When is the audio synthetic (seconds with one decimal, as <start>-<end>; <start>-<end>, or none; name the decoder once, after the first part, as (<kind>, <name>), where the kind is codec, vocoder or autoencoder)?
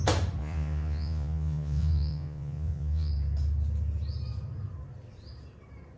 0.4-3.1 (vocoder, Vocos)